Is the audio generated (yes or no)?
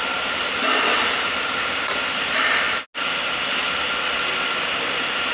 no